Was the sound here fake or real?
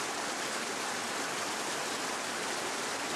real